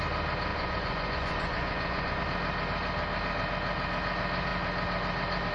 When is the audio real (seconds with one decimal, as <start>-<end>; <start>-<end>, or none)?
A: 0.0-0.5; 2.2-5.5